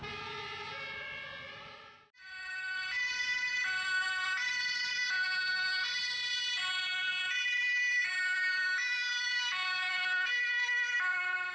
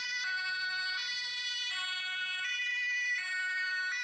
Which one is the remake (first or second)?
first